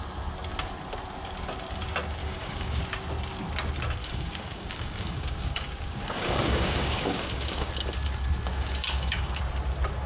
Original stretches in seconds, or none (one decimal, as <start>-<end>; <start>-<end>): 0.0-2.2; 2.8-4.0; 7.7-8.5; 9.4-10.1